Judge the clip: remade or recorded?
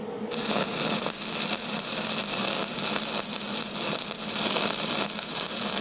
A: recorded